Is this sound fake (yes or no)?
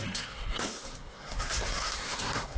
yes